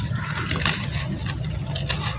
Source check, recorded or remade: remade